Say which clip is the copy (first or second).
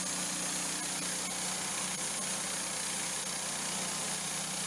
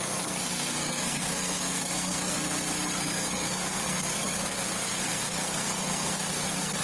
second